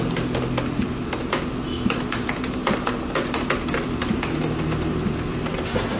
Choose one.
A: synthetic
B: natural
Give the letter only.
B